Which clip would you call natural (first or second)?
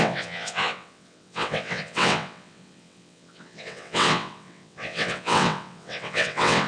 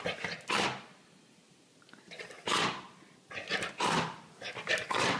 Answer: second